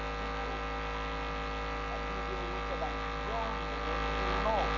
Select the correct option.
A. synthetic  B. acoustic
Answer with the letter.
B